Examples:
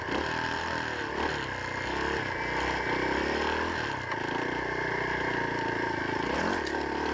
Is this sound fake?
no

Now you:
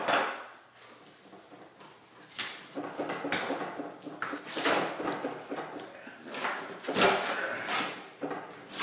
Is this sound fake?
no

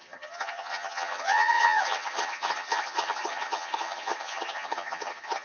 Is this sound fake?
yes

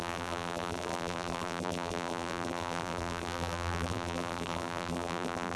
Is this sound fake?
yes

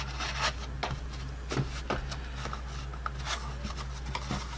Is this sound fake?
no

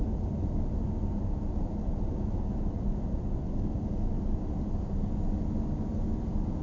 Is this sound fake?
no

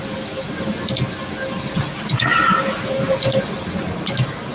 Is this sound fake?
no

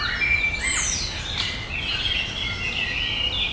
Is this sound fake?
no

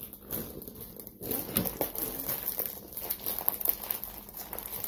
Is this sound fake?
no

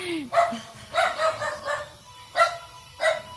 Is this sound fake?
no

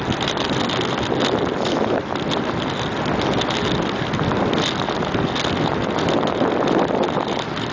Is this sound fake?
no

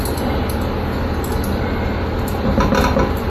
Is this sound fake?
no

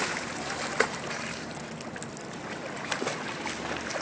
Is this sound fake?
no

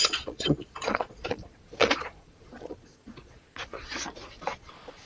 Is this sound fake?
yes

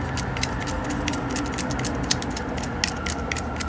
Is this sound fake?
no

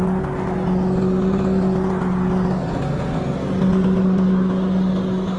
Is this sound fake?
no